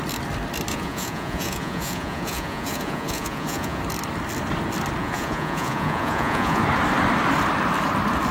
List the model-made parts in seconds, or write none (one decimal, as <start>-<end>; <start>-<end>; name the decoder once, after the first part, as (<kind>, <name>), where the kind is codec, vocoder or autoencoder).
0.7-3.8 (vocoder, Vocos); 5.0-6.6